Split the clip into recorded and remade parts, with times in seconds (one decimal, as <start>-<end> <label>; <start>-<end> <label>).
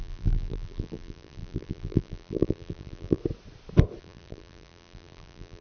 0.0-3.2 remade; 3.2-4.0 recorded; 4.0-5.6 remade